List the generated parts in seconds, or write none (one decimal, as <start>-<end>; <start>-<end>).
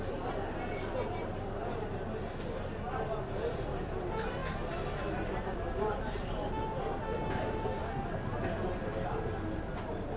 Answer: none